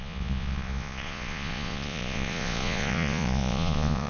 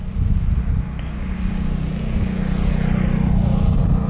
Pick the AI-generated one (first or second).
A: first